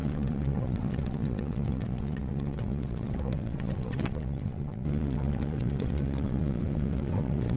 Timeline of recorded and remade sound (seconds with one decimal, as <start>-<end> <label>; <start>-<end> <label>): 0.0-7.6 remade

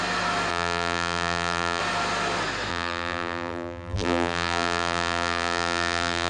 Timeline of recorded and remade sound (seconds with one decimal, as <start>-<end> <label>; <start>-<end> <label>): 0.0-0.5 recorded; 0.5-1.8 remade; 1.8-2.7 recorded; 2.7-6.3 remade

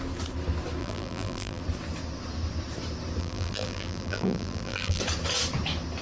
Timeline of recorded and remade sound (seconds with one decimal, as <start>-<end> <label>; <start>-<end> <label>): 0.0-0.8 recorded; 0.8-1.6 remade; 1.6-3.2 recorded; 3.2-5.0 remade; 5.0-6.0 recorded

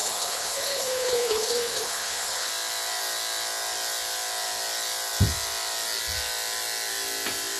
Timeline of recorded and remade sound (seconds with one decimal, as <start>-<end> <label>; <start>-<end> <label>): 0.0-2.5 remade; 2.5-7.6 recorded

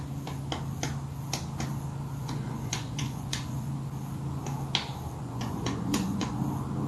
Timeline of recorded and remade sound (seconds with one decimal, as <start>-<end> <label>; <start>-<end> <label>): 0.0-2.2 recorded; 2.2-3.7 remade; 3.7-5.2 recorded; 5.2-6.4 remade; 6.4-6.9 recorded